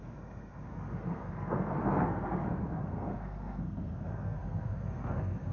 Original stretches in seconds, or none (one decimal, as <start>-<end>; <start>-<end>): none

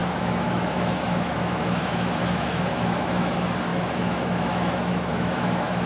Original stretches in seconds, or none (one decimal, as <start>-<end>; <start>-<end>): 3.3-3.7